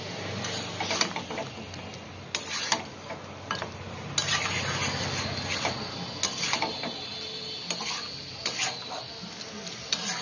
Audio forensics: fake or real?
real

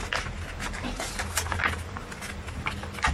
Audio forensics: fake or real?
real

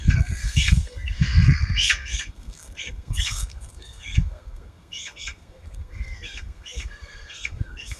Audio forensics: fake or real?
fake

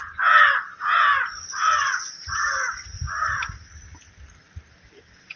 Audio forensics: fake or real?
real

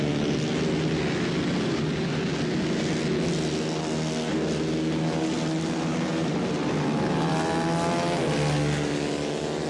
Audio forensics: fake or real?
real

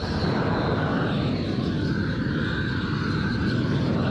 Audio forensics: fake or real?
real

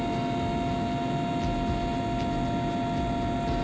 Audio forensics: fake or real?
real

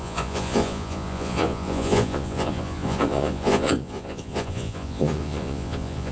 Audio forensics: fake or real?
fake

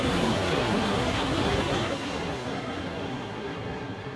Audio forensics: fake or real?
fake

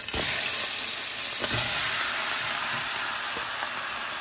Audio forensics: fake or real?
real